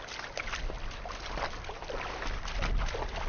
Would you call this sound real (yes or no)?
yes